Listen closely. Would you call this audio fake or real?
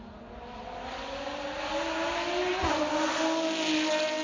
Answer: real